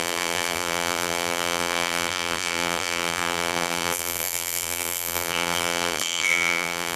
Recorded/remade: remade